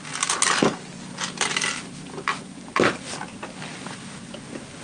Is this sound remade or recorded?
recorded